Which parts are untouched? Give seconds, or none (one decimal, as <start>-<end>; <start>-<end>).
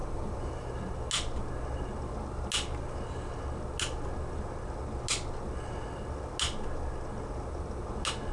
0.9-8.3